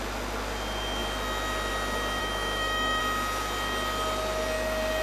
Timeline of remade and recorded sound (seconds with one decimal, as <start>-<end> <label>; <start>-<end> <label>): 0.0-2.2 recorded; 2.2-3.0 remade; 3.0-5.0 recorded